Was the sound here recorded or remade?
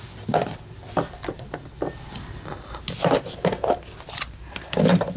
recorded